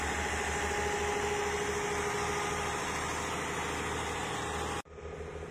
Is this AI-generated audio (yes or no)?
no